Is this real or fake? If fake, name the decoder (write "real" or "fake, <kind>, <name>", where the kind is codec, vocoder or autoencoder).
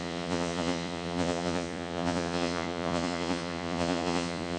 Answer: fake, vocoder, Vocos